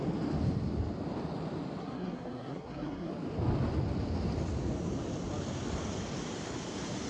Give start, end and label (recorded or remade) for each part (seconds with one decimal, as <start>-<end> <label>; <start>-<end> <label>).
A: 0.0-1.8 recorded; 1.8-3.1 remade; 3.1-7.1 recorded